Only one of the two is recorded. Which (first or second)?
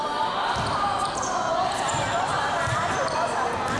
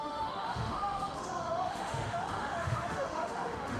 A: first